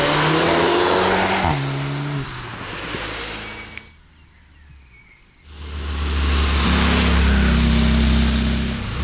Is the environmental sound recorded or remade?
recorded